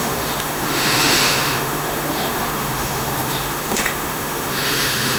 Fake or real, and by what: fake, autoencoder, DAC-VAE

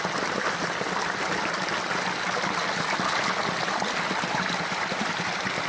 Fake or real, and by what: real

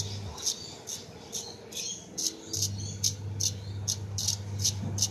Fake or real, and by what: real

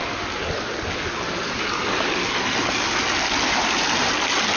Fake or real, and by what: real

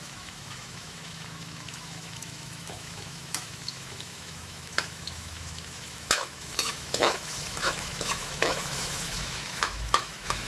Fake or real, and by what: fake, autoencoder, DAC-VAE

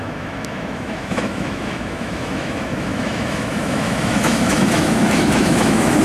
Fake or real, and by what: fake, autoencoder, DAC-VAE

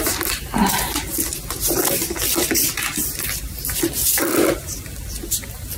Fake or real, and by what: real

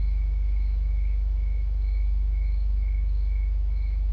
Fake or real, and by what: fake, autoencoder, DAC-VAE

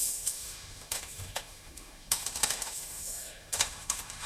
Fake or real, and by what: fake, autoencoder, DAC-VAE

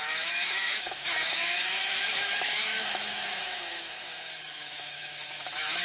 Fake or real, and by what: fake, autoencoder, DAC-VAE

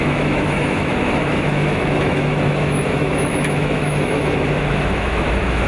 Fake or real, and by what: fake, autoencoder, DAC-VAE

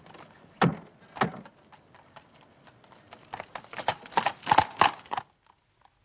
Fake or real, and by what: real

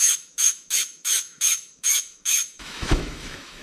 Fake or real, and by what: fake, autoencoder, DAC-VAE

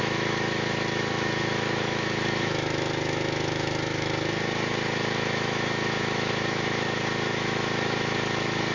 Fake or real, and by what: fake, autoencoder, DAC-VAE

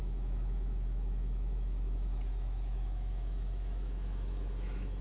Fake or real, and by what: fake, autoencoder, DAC-VAE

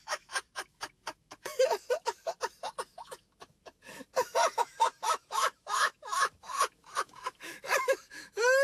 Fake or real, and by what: fake, autoencoder, DAC-VAE